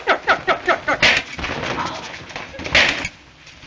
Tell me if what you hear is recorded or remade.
recorded